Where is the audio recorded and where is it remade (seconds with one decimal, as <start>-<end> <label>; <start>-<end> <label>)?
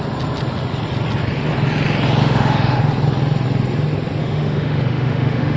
0.0-2.2 recorded; 2.2-2.8 remade; 2.8-4.2 recorded; 4.2-5.6 remade